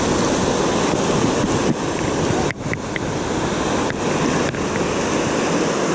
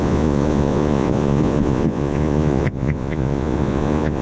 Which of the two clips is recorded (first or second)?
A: first